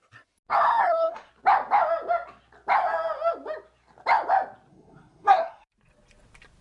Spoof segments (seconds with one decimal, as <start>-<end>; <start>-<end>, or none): 0.8-1.3; 4.7-5.7